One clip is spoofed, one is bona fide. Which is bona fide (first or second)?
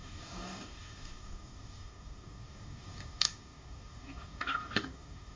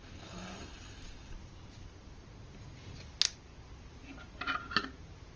second